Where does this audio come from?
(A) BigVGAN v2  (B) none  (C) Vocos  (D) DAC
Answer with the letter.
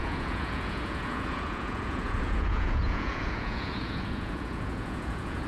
C